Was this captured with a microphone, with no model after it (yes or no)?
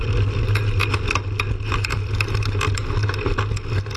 yes